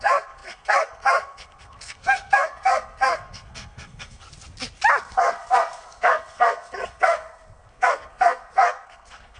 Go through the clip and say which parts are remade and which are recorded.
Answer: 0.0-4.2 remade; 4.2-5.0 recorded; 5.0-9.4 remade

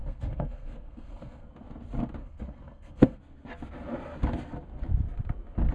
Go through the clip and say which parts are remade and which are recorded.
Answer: 0.0-1.5 remade; 1.5-2.2 recorded; 2.2-3.2 remade; 3.2-5.7 recorded

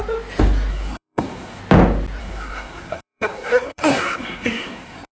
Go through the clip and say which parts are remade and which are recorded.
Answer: 0.0-0.7 recorded; 0.7-1.6 remade; 1.6-2.2 recorded; 2.2-5.1 remade

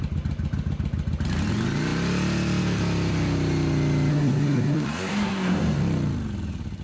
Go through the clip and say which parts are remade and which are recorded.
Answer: 0.0-4.1 recorded; 4.1-5.8 remade; 5.8-6.8 recorded